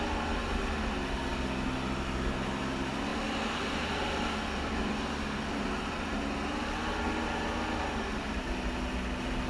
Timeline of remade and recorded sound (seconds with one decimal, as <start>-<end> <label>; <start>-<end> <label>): 0.0-3.1 recorded; 3.1-6.1 remade; 6.1-9.5 recorded